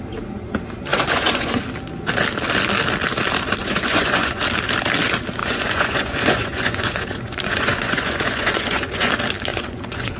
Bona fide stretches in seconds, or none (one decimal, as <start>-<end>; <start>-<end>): 0.0-0.9; 1.6-3.6; 4.4-5.4; 9.1-9.5